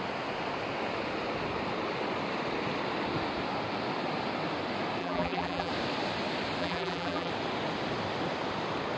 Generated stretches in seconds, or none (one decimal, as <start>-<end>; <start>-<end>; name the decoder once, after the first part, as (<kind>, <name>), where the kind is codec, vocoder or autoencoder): 5.0-5.7 (vocoder, BigVGAN v2); 6.6-7.3